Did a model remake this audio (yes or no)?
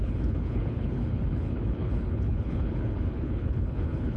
yes